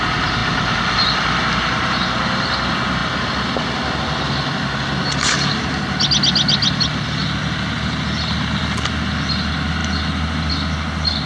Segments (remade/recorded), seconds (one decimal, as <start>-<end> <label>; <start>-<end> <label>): 0.0-11.3 recorded